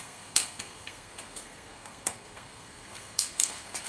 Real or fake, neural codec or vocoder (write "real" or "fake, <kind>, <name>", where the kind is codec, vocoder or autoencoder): fake, codec, SNAC